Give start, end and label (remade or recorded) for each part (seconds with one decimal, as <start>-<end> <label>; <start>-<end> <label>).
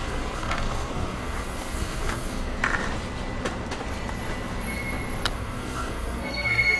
0.0-2.6 remade; 2.6-5.3 recorded; 5.3-6.8 remade